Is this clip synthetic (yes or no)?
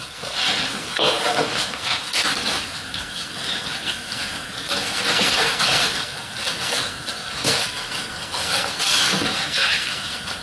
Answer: yes